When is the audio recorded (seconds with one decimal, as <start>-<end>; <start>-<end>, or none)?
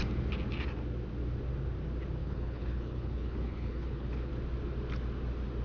0.0-2.2; 4.3-5.6